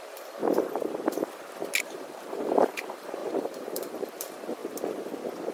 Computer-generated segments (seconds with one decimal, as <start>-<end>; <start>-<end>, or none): 0.0-0.4; 1.8-4.6